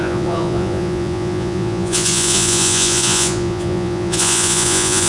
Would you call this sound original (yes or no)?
no